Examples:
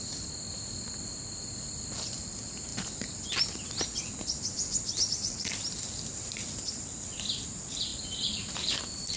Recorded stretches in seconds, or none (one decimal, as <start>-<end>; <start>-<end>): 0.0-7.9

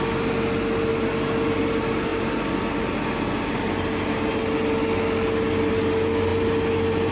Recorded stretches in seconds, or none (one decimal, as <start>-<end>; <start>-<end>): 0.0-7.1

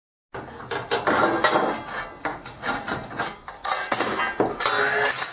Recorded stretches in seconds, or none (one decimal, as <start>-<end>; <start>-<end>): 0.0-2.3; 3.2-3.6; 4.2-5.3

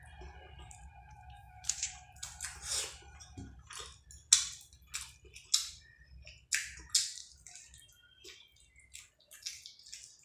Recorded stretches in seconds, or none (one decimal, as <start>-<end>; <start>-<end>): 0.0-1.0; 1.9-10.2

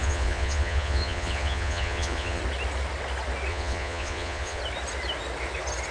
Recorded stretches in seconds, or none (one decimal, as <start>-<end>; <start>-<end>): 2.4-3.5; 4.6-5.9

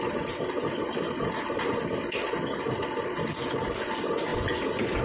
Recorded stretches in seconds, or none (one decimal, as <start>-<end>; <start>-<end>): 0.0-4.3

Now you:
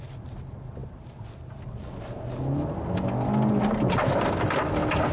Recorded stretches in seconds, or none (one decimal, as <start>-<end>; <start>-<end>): 0.0-5.1

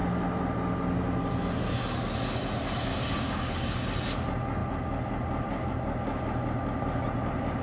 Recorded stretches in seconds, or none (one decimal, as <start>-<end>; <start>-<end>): 0.0-2.9; 3.7-7.6